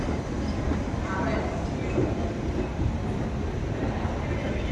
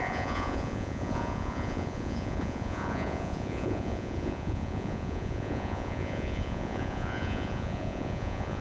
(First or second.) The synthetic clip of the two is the second